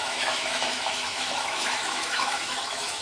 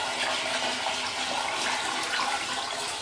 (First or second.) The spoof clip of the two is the first